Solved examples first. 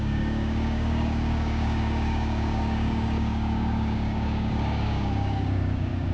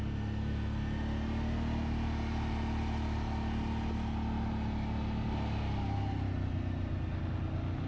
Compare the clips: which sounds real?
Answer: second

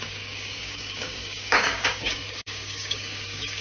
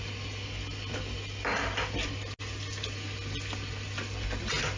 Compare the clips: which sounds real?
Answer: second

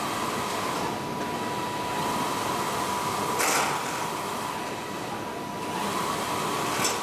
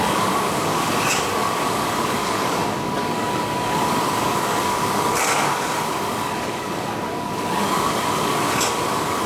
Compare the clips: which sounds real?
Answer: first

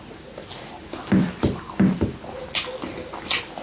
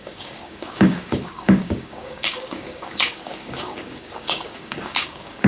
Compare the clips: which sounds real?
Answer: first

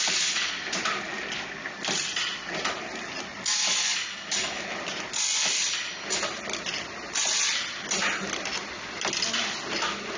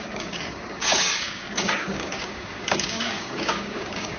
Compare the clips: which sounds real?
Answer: first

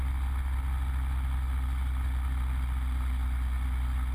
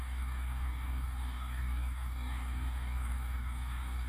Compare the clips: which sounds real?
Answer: first